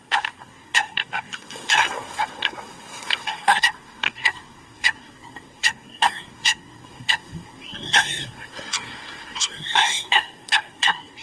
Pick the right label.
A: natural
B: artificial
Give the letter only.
B